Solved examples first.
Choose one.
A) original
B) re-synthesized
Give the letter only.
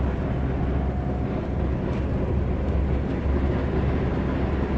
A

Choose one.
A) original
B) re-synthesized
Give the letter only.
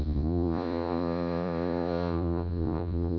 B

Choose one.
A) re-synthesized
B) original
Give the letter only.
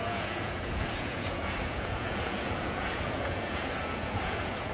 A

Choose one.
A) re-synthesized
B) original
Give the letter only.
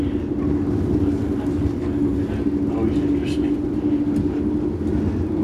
B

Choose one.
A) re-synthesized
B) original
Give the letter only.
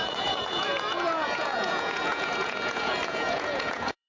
A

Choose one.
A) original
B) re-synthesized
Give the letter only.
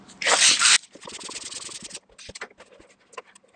A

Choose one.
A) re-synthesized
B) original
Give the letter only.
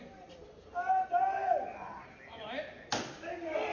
B